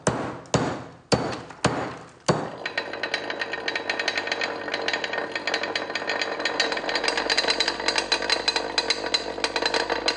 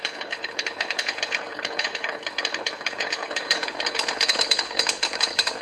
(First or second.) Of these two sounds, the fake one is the second